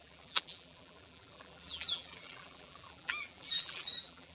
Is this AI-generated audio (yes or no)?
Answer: yes